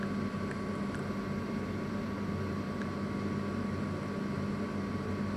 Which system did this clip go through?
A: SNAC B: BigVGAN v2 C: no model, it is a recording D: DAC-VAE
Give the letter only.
C